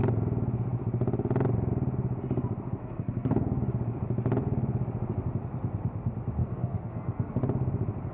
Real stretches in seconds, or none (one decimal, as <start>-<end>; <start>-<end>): 0.0-2.8; 3.6-6.4; 7.3-8.1